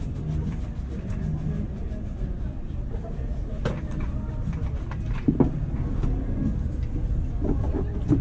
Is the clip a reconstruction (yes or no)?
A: no